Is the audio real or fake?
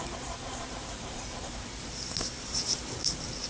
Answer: fake